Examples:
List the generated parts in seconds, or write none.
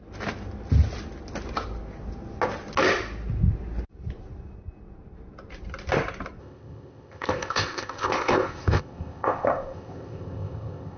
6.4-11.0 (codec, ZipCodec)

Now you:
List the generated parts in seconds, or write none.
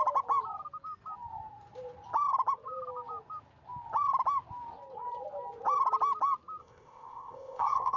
6.6-8.0 (codec, ZipCodec)